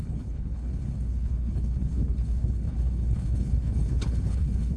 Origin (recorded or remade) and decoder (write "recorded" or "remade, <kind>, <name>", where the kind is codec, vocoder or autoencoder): remade, codec, HILCodec